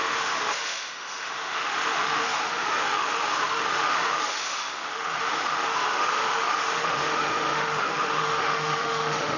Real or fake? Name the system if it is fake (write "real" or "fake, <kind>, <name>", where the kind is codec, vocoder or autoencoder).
fake, autoencoder, DAC-VAE